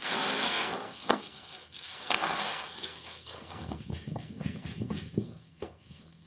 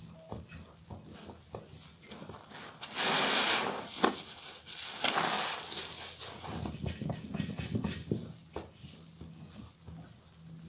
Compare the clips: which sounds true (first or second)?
second